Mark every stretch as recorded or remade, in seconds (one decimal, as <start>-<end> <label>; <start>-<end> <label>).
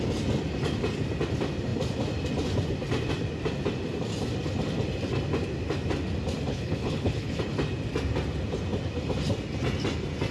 0.0-6.5 recorded; 6.5-7.4 remade; 7.4-10.3 recorded